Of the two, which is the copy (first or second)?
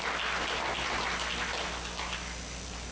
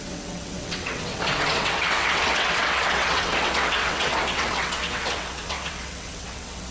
second